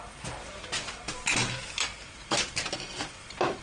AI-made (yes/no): no